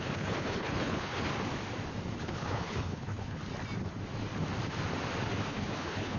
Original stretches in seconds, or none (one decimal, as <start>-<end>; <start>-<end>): 1.3-2.2; 3.4-5.5